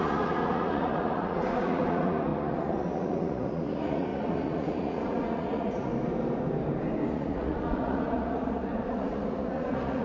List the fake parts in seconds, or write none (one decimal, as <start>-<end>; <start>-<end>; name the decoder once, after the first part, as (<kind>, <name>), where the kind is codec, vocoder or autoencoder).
0.0-5.9 (vocoder, Vocos); 7.1-10.0